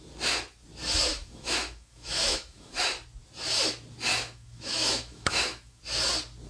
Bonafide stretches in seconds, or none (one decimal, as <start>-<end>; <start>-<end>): 0.0-1.1; 2.9-4.1; 5.8-6.5

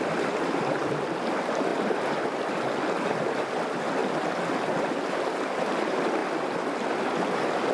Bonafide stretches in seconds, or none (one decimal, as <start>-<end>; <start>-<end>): 0.0-7.7

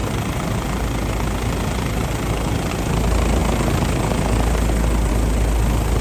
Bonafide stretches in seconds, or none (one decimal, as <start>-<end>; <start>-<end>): 0.0-6.0

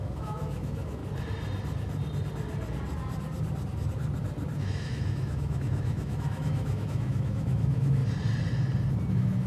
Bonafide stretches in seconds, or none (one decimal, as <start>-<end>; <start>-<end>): 1.0-4.6; 8.0-9.1

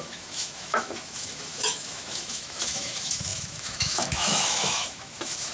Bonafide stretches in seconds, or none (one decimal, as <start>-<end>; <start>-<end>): none

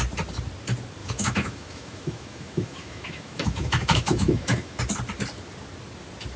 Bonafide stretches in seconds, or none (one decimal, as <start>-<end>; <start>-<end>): 0.0-1.0; 4.8-6.4

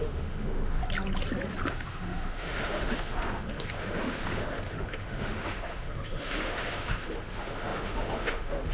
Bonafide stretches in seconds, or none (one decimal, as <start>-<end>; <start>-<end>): 0.8-1.7